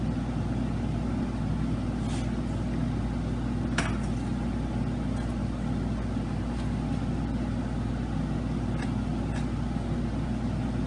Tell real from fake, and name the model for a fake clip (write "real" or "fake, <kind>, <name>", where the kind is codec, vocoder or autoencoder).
real